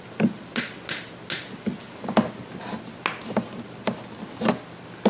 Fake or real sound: real